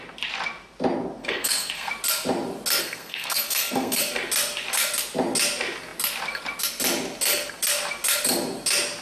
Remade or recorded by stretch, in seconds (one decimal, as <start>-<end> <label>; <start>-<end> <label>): 0.0-1.2 recorded; 1.2-1.9 remade; 1.9-2.8 recorded; 2.8-4.0 remade; 4.0-9.0 recorded